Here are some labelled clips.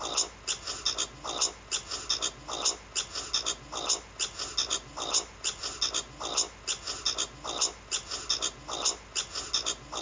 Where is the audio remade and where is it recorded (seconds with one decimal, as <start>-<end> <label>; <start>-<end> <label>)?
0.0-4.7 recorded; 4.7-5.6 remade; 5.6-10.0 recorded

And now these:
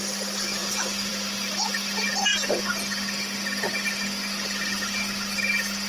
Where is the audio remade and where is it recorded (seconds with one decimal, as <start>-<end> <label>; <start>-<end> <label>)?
0.0-0.6 recorded; 0.6-1.1 remade; 1.1-5.9 recorded

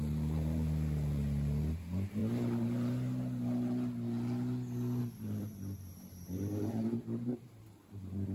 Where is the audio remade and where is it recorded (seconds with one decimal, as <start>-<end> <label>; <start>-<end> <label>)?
0.0-2.2 remade; 2.2-5.0 recorded; 5.0-8.3 remade

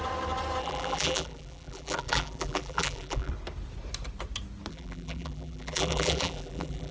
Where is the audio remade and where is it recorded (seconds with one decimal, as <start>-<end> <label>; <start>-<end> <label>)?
0.0-0.6 recorded; 0.6-3.3 remade; 3.3-4.7 recorded; 4.7-6.9 remade